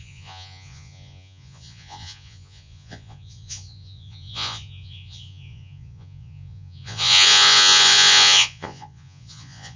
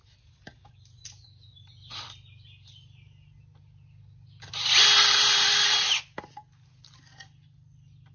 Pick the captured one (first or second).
second